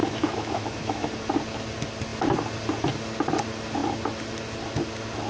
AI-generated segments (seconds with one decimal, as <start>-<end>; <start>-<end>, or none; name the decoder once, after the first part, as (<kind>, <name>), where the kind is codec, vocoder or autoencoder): 0.0-1.1 (autoencoder, DAC-VAE)